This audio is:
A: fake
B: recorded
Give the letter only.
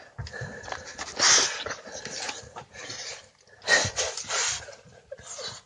B